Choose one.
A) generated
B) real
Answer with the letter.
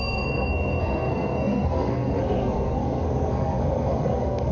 A